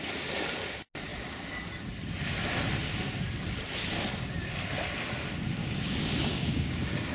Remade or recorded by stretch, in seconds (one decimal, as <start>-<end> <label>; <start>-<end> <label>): 0.0-5.6 recorded; 5.6-7.1 remade